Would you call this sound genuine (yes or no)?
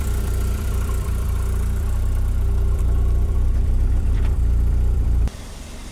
no